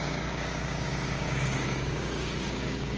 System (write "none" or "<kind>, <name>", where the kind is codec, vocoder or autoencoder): codec, DAC